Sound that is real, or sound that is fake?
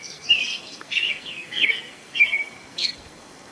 fake